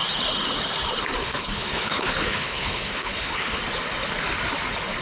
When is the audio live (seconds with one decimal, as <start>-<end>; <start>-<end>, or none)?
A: 0.0-1.2; 3.6-5.0